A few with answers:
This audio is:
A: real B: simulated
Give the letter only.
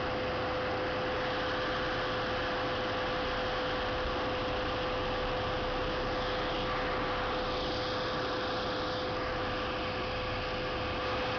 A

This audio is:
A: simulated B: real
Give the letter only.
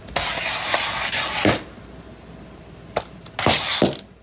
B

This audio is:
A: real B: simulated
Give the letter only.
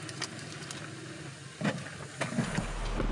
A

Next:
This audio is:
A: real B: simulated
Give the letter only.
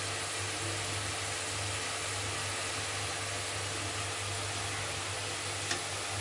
A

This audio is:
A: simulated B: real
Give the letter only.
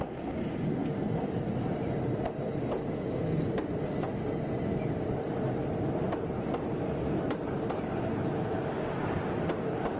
B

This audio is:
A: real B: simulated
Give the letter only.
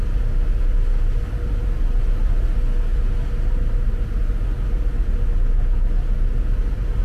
A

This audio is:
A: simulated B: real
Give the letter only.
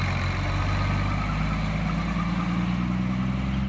B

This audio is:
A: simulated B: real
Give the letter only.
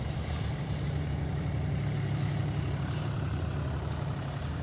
A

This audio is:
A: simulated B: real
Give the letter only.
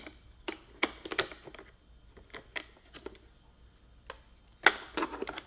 B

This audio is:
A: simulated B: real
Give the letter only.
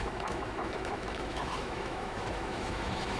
A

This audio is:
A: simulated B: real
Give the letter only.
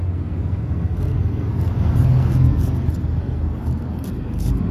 A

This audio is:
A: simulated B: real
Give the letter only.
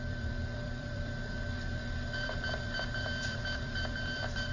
A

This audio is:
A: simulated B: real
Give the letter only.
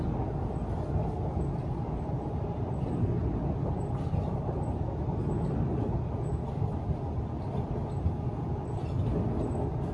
B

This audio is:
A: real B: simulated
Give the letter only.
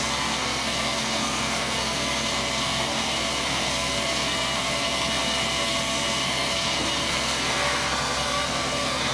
B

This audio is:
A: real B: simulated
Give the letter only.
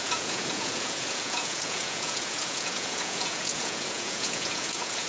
B